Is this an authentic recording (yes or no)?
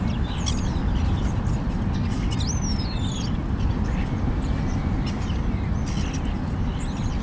yes